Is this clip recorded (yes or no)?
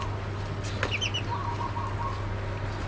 yes